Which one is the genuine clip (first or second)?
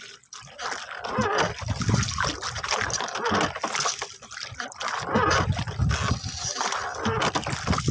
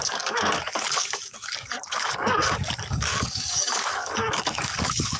first